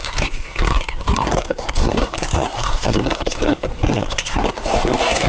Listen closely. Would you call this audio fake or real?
fake